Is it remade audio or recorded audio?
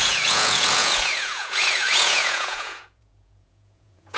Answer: remade